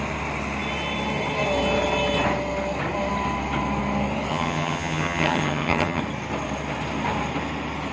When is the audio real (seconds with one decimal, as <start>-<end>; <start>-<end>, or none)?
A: 0.0-4.3; 6.0-7.9